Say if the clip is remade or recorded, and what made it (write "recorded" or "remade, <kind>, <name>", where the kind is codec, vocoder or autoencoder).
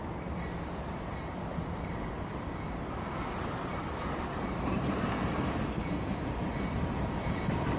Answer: remade, vocoder, BigVGAN v2